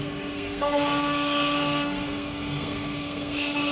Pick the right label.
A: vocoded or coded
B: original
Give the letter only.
A